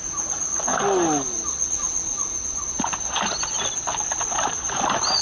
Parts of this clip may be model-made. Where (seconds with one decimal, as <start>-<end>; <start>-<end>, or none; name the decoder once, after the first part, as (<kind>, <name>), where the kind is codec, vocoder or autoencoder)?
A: none